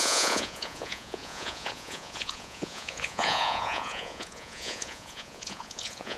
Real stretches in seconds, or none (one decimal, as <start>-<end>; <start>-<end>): none